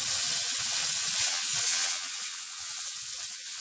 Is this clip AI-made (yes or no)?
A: yes